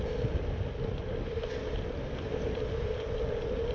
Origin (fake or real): real